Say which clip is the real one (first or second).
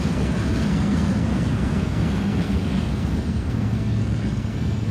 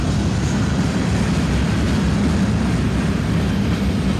second